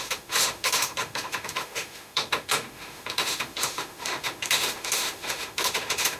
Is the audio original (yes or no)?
no